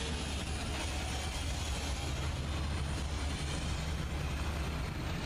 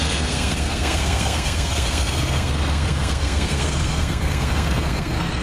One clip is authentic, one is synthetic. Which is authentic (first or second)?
first